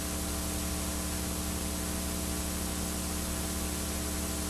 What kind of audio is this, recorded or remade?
recorded